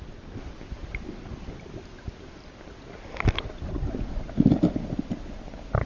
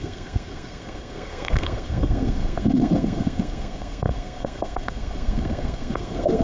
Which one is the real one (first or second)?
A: first